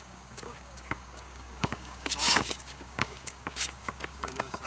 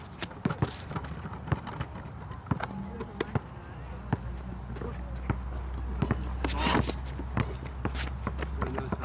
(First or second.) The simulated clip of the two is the first